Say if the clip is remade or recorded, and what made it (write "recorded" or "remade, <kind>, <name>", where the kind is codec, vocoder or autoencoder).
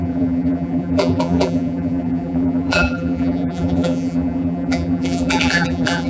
remade, vocoder, BigVGAN v2